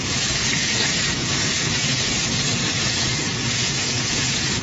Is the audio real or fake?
fake